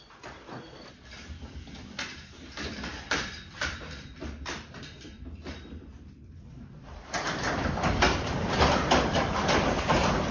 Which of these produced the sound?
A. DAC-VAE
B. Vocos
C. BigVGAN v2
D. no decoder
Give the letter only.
C